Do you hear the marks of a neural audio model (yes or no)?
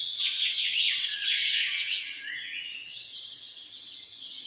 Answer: yes